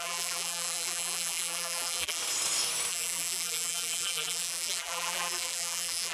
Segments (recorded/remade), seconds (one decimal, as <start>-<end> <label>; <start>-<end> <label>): 0.0-2.2 remade; 2.2-2.9 recorded; 2.9-6.1 remade